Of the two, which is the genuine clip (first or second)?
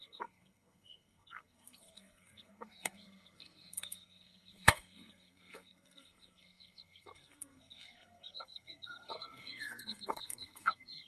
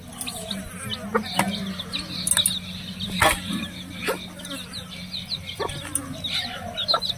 second